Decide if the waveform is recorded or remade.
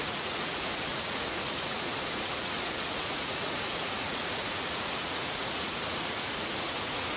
remade